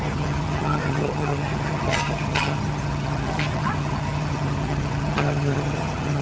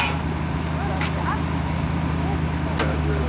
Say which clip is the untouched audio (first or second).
second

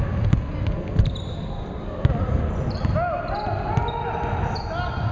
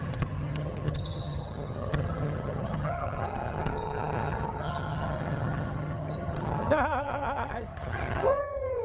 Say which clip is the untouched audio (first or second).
first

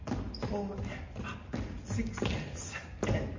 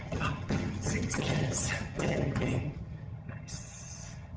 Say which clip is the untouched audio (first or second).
first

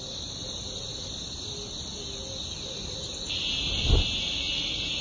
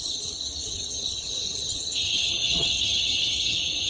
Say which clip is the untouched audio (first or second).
first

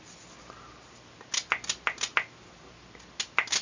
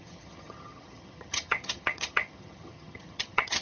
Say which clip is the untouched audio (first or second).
first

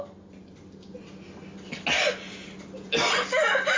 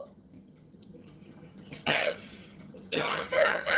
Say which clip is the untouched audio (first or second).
first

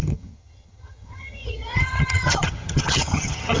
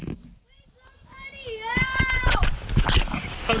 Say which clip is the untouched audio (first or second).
second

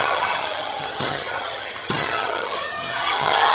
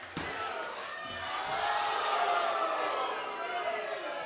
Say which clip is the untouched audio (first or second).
second